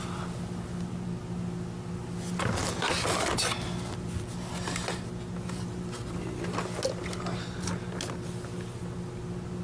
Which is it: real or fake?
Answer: real